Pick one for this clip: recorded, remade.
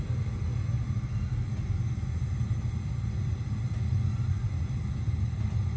recorded